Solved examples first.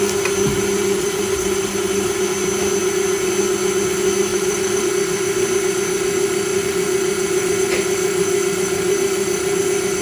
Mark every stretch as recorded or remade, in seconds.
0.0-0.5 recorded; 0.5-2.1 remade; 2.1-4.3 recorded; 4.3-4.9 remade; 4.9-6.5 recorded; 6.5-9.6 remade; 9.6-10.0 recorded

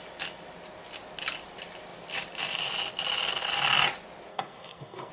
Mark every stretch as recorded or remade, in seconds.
0.0-4.3 recorded; 4.3-5.1 remade

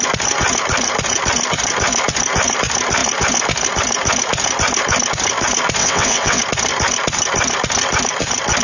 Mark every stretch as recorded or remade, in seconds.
0.0-5.8 recorded; 5.8-6.4 remade; 6.4-8.6 recorded

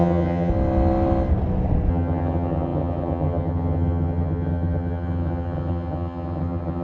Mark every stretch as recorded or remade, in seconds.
0.0-0.5 remade; 0.5-1.9 recorded; 1.9-6.8 remade

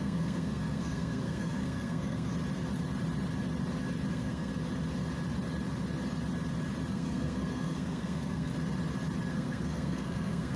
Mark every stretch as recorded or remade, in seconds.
0.0-2.3 remade; 2.3-4.1 recorded; 4.1-4.5 remade; 4.5-6.9 recorded; 6.9-8.5 remade; 8.5-9.3 recorded; 9.3-10.6 remade

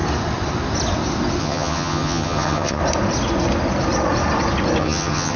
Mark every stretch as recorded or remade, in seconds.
0.0-1.4 recorded; 1.4-2.8 remade; 2.8-4.8 recorded; 4.8-5.4 remade